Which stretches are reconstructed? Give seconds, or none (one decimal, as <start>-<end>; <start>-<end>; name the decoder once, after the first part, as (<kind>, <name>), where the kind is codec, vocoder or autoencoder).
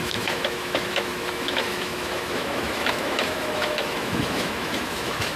0.0-5.4 (autoencoder, DAC-VAE)